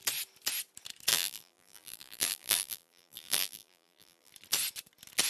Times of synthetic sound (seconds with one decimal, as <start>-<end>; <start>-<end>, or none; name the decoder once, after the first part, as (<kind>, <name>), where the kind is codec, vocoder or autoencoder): 1.1-4.3 (vocoder, BigVGAN v2)

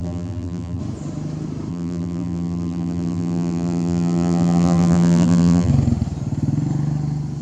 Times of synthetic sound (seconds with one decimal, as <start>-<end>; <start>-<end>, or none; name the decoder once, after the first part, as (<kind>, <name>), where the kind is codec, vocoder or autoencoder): 0.0-0.8 (vocoder, BigVGAN v2); 1.7-5.7

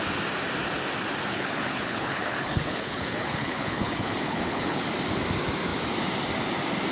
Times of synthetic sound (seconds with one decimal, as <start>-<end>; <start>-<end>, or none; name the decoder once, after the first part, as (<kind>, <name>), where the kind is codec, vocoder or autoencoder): 1.3-4.8 (codec, HILCodec)

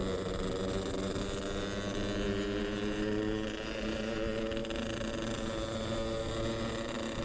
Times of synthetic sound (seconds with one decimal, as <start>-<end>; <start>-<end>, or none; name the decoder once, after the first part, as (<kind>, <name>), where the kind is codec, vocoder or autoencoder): none

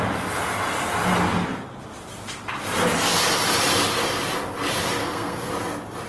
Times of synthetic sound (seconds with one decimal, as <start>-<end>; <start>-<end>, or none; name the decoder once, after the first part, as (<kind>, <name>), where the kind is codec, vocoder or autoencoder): 5.0-5.5 (codec, SNAC)

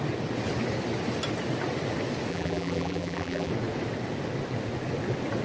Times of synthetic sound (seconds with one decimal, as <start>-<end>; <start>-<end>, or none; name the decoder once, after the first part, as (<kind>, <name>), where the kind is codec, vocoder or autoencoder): 2.3-3.5 (vocoder, BigVGAN v2)

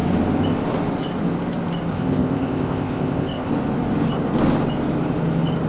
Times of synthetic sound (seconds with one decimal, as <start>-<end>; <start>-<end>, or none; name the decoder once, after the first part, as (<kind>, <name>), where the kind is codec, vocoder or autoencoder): 1.9-3.5 (codec, ZipCodec)

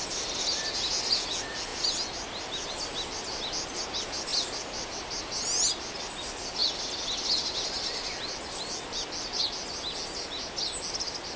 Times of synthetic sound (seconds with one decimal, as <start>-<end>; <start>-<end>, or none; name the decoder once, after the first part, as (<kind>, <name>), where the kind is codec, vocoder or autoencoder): none